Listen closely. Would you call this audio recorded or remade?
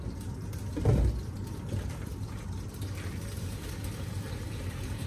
recorded